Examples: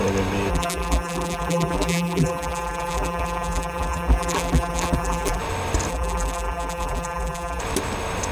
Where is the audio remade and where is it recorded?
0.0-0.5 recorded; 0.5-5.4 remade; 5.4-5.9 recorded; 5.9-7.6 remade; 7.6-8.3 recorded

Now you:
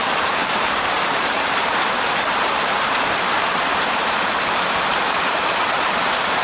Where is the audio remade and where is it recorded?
0.0-6.4 remade